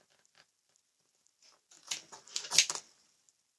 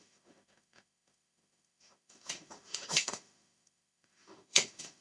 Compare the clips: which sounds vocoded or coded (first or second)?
second